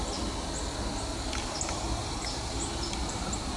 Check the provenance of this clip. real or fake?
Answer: real